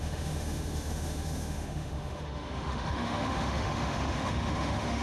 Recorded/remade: remade